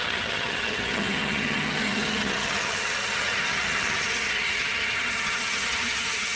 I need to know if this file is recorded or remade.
remade